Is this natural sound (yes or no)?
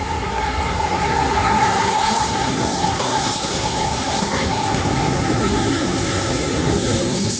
no